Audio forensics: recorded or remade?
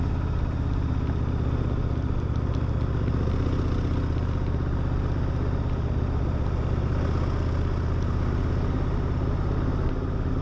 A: recorded